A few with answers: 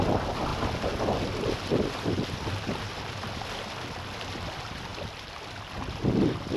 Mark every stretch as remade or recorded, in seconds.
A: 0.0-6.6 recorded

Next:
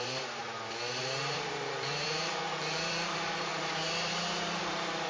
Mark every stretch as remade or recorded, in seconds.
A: 0.0-0.4 remade; 0.4-1.0 recorded; 1.0-5.1 remade

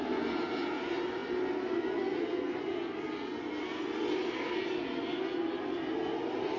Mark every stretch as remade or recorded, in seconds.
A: 0.0-6.6 recorded

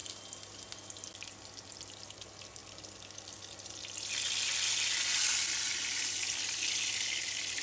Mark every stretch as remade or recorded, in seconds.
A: 0.0-7.6 recorded

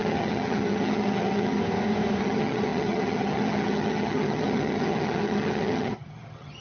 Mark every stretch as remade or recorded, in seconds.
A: 0.0-1.6 remade; 1.6-2.2 recorded; 2.2-6.6 remade